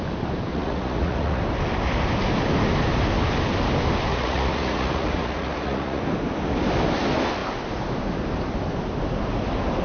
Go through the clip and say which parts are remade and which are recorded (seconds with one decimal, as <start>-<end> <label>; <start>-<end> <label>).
0.0-0.5 recorded; 0.5-1.4 remade; 1.4-4.1 recorded; 4.1-6.0 remade; 6.0-9.8 recorded